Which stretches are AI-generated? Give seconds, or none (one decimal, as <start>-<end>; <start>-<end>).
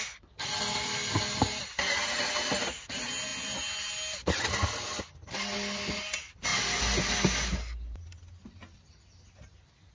none